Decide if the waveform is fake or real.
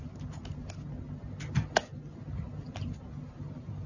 real